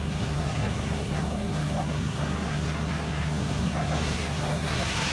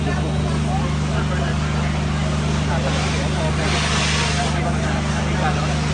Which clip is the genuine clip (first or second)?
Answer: second